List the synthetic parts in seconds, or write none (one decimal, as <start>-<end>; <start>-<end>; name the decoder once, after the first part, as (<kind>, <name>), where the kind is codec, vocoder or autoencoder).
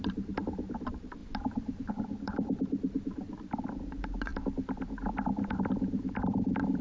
0.0-6.8 (vocoder, BigVGAN v2)